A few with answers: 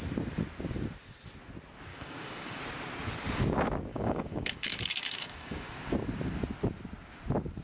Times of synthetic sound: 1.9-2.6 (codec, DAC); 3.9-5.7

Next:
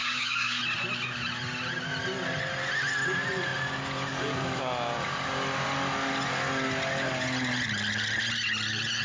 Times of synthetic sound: 0.0-0.6 (codec, DAC)

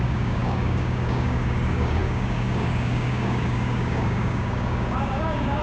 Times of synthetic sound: 0.0-5.6 (codec, DAC)

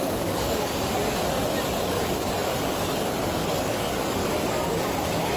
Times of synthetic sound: 0.0-0.7 (codec, DAC); 1.8-5.4

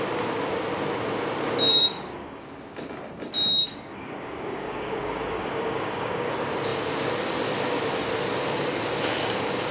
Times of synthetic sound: 1.7-2.4 (codec, DAC); 3.6-6.3

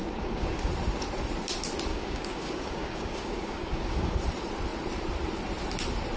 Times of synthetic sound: 0.0-0.7 (codec, DAC); 1.9-4.2

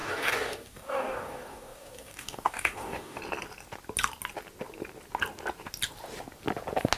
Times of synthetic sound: 0.0-3.2 (codec, DAC)

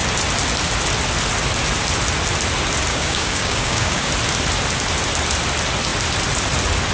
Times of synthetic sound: 2.9-4.1 (codec, DAC)